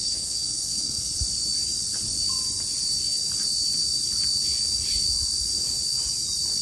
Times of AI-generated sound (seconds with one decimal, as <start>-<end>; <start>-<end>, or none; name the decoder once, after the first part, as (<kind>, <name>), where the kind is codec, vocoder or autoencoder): 0.0-1.1 (codec, SNAC)